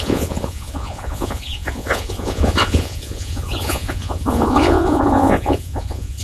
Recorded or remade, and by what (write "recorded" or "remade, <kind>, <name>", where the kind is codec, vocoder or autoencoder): remade, vocoder, Vocos